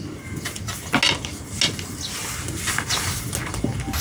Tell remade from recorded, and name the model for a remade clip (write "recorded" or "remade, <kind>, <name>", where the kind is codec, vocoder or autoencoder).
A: recorded